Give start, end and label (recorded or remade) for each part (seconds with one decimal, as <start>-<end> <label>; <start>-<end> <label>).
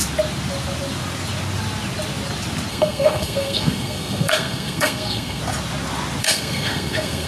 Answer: 0.0-2.7 recorded; 2.7-5.4 remade; 5.4-6.2 recorded; 6.2-7.3 remade